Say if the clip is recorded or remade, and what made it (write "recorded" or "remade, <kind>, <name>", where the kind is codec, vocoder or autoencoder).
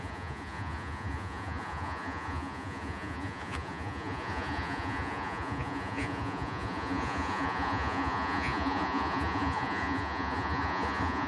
remade, vocoder, Vocos